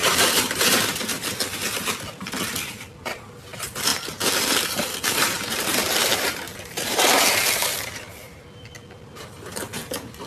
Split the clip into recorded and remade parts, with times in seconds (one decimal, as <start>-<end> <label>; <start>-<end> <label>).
0.0-3.9 remade; 3.9-4.4 recorded; 4.4-10.3 remade